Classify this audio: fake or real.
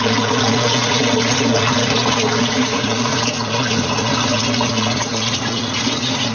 fake